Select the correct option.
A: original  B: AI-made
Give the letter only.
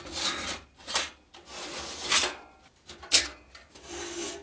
A